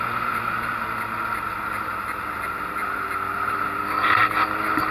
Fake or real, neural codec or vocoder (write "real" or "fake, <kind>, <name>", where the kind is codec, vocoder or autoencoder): real